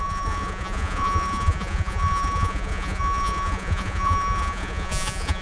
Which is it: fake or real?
fake